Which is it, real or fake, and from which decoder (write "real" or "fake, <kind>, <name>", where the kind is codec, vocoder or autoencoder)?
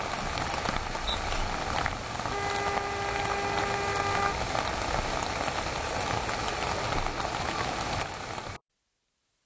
real